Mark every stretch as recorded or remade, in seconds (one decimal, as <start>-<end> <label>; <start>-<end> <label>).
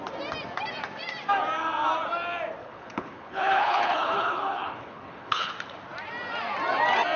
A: 0.0-2.6 recorded; 2.6-5.5 remade; 5.5-7.2 recorded